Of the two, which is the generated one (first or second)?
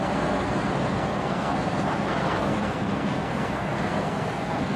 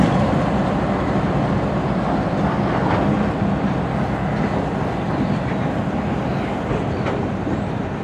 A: first